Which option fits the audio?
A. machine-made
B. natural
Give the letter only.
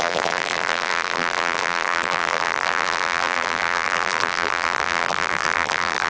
A